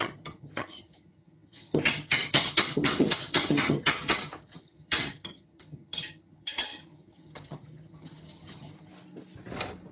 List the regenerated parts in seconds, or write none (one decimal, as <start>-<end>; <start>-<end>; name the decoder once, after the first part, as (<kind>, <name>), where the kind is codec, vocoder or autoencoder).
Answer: 0.0-8.9 (vocoder, HiFi-GAN)